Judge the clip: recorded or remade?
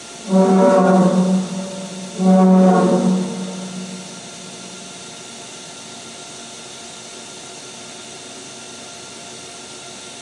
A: recorded